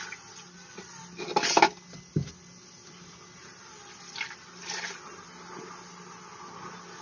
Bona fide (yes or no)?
yes